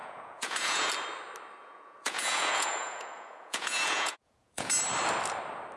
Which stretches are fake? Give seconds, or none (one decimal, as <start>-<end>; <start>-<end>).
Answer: 0.0-0.9; 1.6-4.7